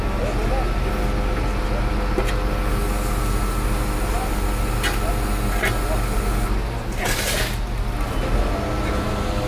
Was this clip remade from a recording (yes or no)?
no